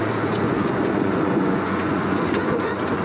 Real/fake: fake